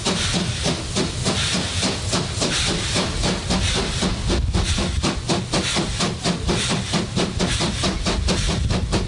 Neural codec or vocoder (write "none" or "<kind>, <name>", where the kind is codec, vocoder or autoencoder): none